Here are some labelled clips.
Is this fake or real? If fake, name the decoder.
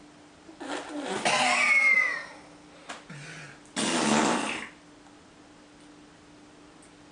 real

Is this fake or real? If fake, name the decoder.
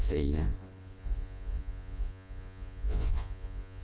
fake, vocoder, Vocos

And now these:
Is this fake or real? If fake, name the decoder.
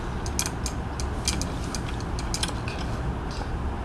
real